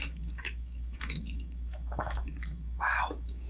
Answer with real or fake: fake